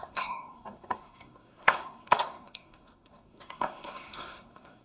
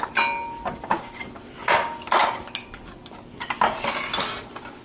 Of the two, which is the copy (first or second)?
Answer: first